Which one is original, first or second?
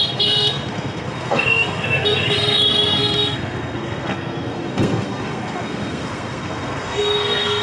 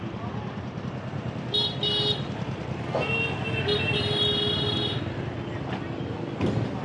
second